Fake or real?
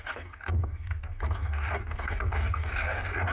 fake